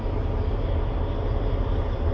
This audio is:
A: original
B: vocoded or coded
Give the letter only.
A